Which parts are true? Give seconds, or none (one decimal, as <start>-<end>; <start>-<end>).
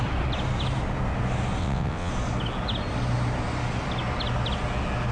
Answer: 0.0-1.6; 2.1-5.1